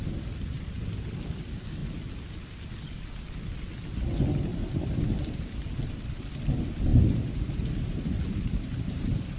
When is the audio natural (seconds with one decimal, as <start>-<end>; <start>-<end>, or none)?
0.0-4.5; 5.4-6.9